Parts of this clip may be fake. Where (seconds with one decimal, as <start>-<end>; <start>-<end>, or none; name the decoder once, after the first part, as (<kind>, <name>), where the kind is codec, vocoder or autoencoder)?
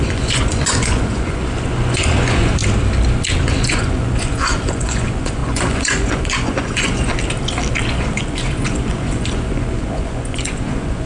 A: 0.0-2.6 (vocoder, Vocos); 3.5-7.1; 7.9-11.1